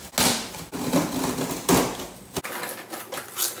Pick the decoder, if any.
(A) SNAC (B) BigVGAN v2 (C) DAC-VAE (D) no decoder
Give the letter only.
D